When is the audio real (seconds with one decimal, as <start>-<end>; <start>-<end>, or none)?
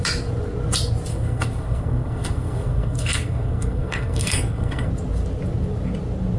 0.0-1.1; 4.9-6.4